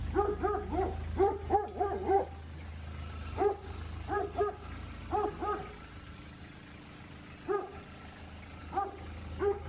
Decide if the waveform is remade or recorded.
recorded